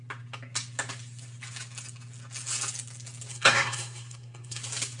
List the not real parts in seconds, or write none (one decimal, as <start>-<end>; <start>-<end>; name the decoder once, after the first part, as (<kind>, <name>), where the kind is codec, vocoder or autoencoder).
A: 3.3-4.6 (codec, SNAC)